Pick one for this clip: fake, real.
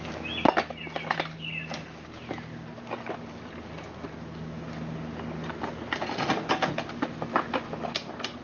real